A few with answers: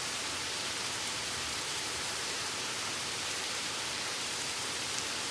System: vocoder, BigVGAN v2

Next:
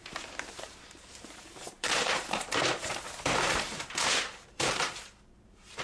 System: vocoder, BigVGAN v2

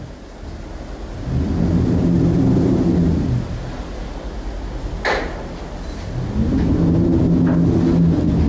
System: none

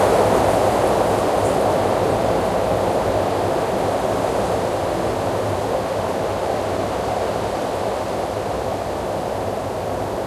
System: none